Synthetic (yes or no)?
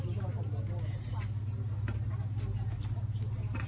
no